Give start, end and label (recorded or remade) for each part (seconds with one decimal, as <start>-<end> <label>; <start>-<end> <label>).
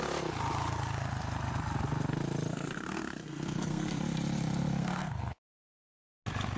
0.0-2.5 recorded; 2.5-4.0 remade; 4.0-4.8 recorded; 4.8-5.4 remade; 5.4-6.6 recorded